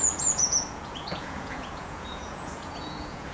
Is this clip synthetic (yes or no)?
yes